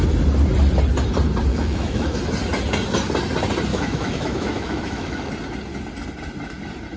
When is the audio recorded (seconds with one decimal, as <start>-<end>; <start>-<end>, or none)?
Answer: 0.0-1.5; 2.2-3.7; 5.3-7.0